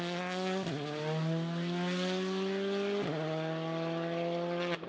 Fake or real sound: real